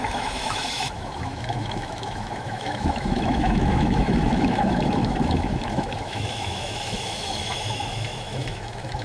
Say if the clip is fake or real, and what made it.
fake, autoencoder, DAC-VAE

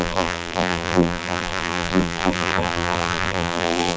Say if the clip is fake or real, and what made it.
fake, vocoder, BigVGAN v2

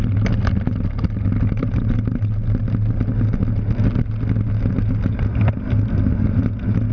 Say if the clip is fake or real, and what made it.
real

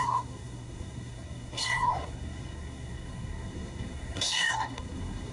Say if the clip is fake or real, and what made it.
fake, codec, SNAC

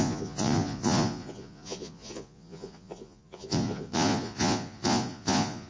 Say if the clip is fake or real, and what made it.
fake, vocoder, Vocos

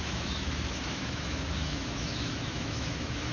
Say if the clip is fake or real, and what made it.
fake, autoencoder, DAC-VAE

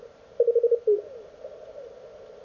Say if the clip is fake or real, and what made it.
real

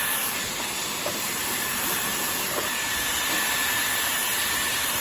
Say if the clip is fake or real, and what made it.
fake, vocoder, BigVGAN v2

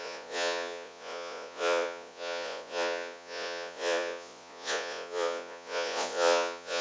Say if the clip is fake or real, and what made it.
fake, vocoder, Vocos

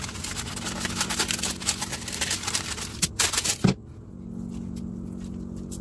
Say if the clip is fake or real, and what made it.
real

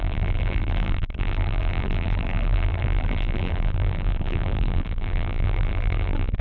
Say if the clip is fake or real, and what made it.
fake, vocoder, BigVGAN v2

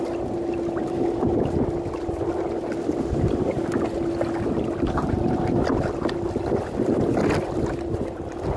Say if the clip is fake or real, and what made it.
real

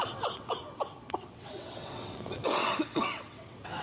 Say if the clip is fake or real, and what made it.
fake, vocoder, WaveNeXt